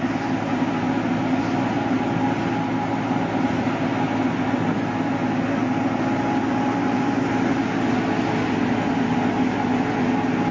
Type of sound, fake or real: real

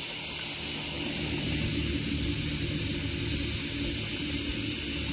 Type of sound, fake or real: real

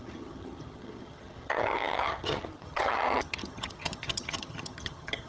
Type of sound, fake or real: fake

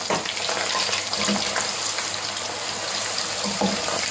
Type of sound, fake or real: real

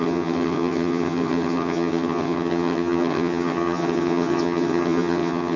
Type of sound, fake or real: fake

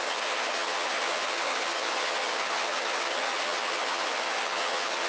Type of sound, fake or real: fake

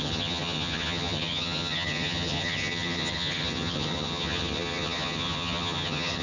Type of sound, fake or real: fake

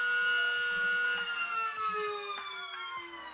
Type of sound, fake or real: real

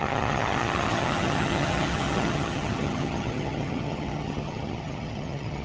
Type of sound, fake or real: fake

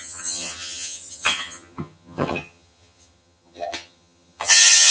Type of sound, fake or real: fake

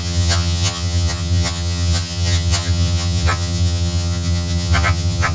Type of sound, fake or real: fake